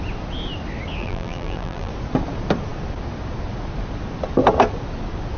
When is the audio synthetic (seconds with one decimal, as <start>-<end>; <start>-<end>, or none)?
1.0-1.9